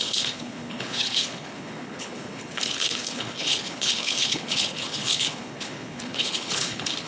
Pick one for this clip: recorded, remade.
remade